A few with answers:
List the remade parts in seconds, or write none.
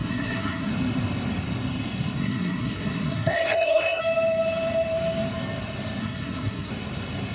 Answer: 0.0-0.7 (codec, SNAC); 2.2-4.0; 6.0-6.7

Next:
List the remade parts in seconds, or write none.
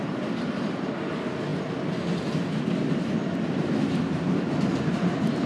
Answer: none